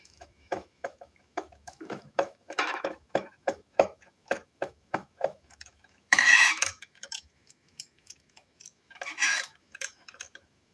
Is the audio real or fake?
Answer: fake